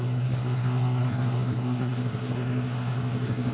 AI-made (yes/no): yes